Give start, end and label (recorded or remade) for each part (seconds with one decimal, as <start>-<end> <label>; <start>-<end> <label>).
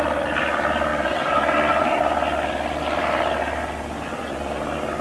0.0-0.9 recorded; 0.9-2.0 remade; 2.0-4.1 recorded; 4.1-4.6 remade; 4.6-5.0 recorded